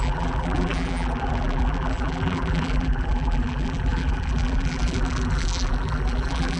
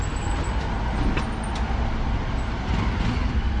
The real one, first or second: second